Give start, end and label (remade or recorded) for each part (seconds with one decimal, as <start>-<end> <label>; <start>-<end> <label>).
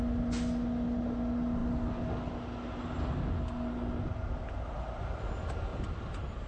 0.0-5.7 recorded; 5.7-6.5 remade